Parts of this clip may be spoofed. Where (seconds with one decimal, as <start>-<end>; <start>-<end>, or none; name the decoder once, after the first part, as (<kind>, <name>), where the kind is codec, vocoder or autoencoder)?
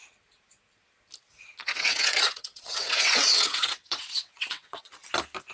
1.6-4.9 (vocoder, WaveNeXt)